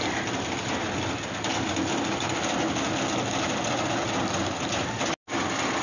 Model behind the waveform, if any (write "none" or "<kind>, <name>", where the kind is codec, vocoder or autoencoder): none